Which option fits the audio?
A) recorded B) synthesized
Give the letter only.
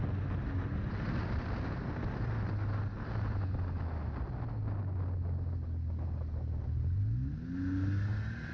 A